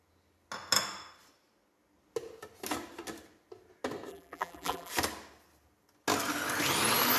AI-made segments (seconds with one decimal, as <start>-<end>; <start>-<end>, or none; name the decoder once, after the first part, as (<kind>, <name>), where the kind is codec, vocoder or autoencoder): 4.1-4.9 (vocoder, BigVGAN v2)